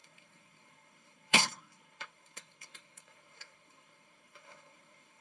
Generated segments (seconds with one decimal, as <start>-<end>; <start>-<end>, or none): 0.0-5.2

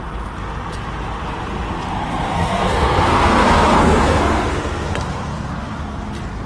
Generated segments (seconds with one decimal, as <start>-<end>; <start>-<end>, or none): 2.3-5.5

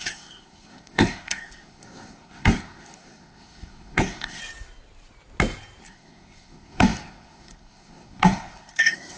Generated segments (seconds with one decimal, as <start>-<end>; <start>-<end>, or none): 0.0-4.4; 5.8-9.2